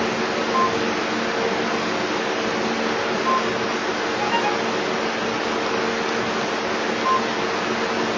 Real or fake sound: real